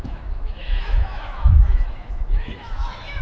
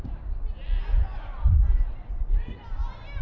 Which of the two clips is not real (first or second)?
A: first